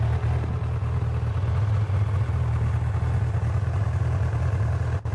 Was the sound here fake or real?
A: real